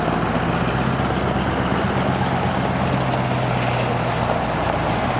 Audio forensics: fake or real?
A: real